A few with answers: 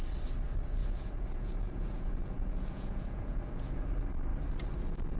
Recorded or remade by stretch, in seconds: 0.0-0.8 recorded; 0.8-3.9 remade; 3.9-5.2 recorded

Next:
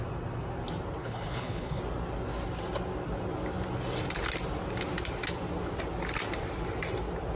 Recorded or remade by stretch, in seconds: 0.0-1.0 recorded; 1.0-1.8 remade; 1.8-7.4 recorded

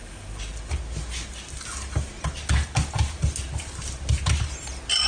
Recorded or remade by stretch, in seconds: 0.0-5.1 recorded

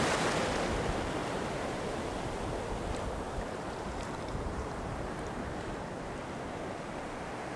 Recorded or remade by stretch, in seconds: 0.0-1.2 recorded; 1.2-5.8 remade; 5.8-7.6 recorded

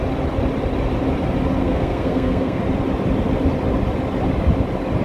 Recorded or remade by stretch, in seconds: 0.0-1.6 recorded; 1.6-2.6 remade; 2.6-5.0 recorded

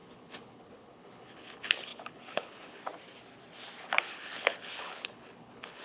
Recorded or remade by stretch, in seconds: 0.0-2.9 remade; 2.9-3.8 recorded; 3.8-5.8 remade

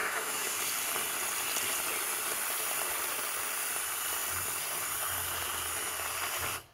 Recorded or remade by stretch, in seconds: 0.0-0.5 remade; 0.5-6.7 recorded